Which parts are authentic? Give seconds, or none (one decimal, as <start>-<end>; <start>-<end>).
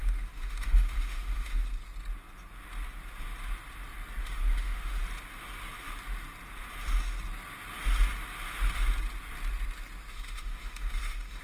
1.6-4.2; 5.0-10.1